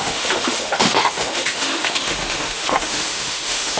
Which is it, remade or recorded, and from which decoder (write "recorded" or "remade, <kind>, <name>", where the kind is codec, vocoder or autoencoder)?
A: remade, autoencoder, DAC-VAE